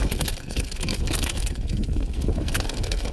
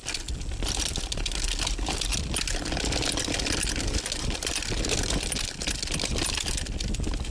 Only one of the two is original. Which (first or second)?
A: second